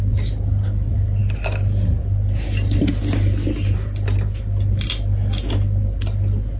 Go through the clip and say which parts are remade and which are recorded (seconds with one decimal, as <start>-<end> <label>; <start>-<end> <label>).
0.0-6.6 recorded